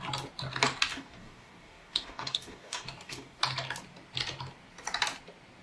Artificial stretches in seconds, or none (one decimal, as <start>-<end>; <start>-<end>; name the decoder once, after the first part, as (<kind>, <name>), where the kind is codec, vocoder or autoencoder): 0.9-3.4 (codec, DAC)